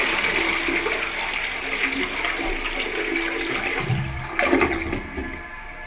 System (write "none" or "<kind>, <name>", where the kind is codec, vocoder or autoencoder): none